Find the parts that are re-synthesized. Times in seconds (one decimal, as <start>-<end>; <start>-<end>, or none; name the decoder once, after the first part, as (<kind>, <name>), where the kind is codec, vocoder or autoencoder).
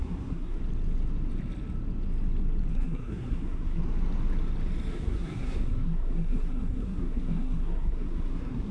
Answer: 0.0-0.6 (codec, SNAC); 2.7-3.8; 4.9-8.7